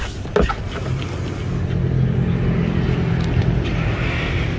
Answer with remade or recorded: recorded